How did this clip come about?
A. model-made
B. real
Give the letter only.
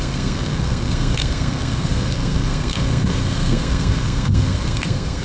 A